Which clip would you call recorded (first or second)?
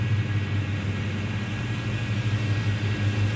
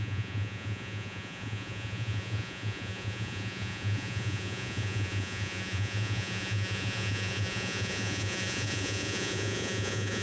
first